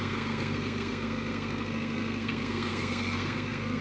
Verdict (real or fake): fake